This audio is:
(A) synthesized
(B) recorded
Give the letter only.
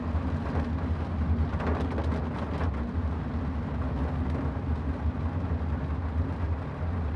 B